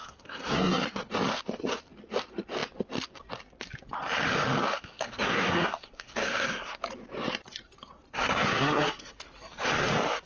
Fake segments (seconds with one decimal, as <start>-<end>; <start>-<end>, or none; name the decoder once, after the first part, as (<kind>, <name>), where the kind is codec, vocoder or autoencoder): 0.0-1.1 (codec, SNAC); 4.7-6.8; 8.1-9.2